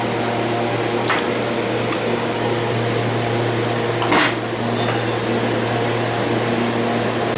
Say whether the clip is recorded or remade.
recorded